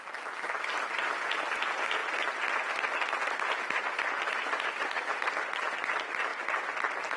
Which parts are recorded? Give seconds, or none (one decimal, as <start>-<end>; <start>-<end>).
2.0-4.4; 6.3-7.2